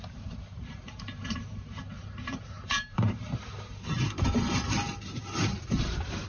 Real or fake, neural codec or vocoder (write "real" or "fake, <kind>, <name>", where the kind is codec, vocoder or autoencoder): fake, vocoder, BigVGAN v2